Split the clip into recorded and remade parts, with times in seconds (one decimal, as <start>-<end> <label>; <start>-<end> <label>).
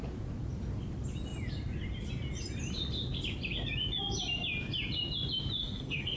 0.0-5.6 recorded; 5.6-6.2 remade